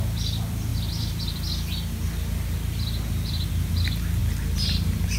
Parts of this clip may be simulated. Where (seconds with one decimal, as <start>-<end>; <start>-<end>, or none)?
4.2-5.2